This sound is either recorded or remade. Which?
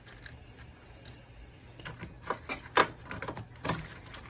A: recorded